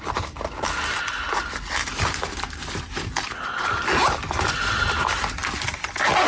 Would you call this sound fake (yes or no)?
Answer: no